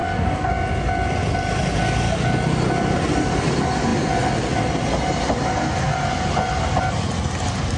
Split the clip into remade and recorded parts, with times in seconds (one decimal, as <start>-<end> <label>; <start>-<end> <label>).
0.0-0.5 remade; 0.5-7.8 recorded